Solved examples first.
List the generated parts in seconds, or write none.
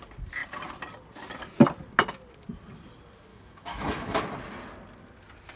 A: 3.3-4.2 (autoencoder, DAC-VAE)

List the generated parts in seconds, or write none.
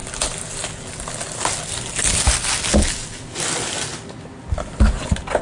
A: none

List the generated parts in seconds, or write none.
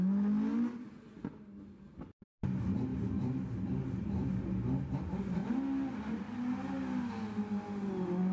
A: 2.9-4.3 (vocoder, BigVGAN v2)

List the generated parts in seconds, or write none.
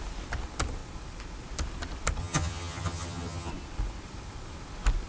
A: 2.2-3.5 (vocoder, HiFi-GAN)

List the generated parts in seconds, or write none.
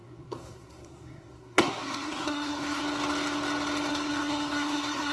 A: 0.0-2.8 (codec, SNAC); 3.9-5.1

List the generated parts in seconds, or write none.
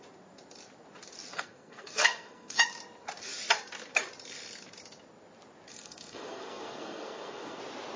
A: 1.3-2.6 (codec, SNAC); 5.7-7.6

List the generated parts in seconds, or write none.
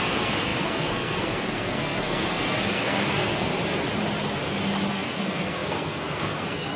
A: 0.0-3.5 (codec, SNAC); 4.9-6.8